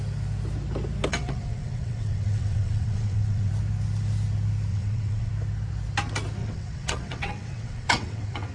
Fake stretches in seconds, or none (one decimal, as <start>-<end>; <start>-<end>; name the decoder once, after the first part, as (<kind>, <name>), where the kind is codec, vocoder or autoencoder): 1.1-3.5 (vocoder, WaveNeXt); 4.7-5.3; 6.4-8.5